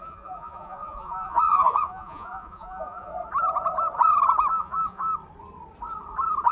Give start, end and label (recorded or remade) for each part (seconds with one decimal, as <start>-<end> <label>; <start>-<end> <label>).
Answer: 0.0-3.1 remade; 3.1-4.5 recorded; 4.5-5.1 remade; 5.1-6.5 recorded